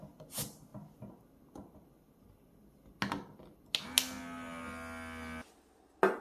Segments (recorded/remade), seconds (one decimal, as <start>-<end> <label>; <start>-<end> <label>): 0.0-6.2 recorded

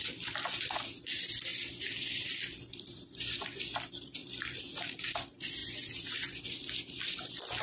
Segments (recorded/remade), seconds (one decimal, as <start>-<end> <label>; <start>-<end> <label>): 0.0-1.5 remade; 1.5-2.9 recorded; 2.9-7.6 remade

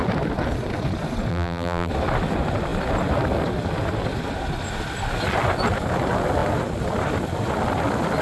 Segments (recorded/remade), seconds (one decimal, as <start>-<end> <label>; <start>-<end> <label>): 0.0-1.3 recorded; 1.3-1.9 remade; 1.9-8.2 recorded

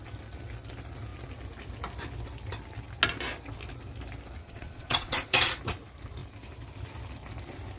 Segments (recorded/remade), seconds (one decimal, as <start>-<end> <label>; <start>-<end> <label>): 0.0-4.4 recorded; 4.4-5.5 remade; 5.5-7.8 recorded

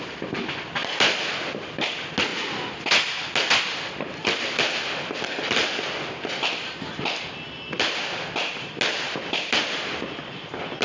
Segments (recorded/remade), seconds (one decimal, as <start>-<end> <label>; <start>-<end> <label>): 0.0-10.8 recorded